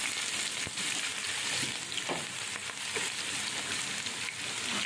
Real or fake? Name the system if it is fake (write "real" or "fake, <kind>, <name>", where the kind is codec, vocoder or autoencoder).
fake, vocoder, BigVGAN v2